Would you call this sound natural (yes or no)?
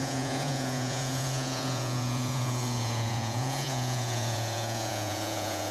no